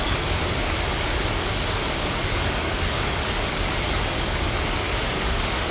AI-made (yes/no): yes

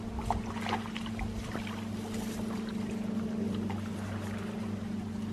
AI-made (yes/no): no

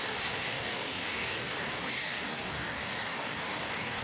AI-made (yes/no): yes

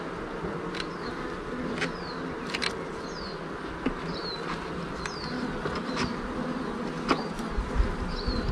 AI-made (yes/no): no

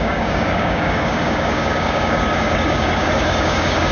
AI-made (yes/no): yes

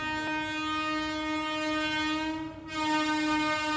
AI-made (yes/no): no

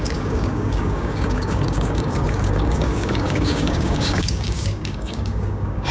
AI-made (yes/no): yes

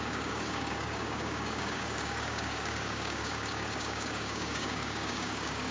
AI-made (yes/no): yes